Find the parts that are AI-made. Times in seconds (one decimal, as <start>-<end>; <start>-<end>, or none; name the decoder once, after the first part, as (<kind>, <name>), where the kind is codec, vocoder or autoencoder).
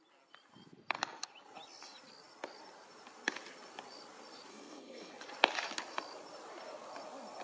4.5-5.1 (codec, SNAC)